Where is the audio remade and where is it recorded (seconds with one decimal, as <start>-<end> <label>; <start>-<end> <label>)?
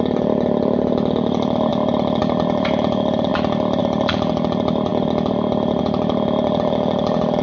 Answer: 0.0-7.4 remade